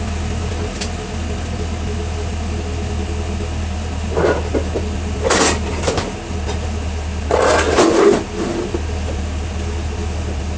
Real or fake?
real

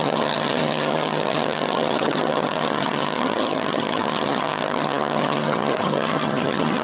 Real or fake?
fake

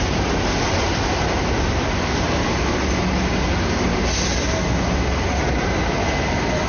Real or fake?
real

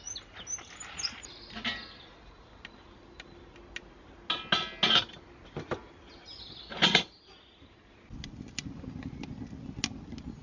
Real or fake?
real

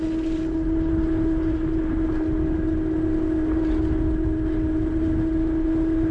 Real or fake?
real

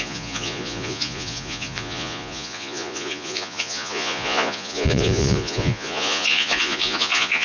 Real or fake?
fake